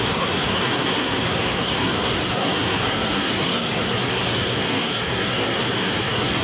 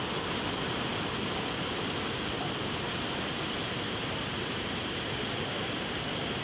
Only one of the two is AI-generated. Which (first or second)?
first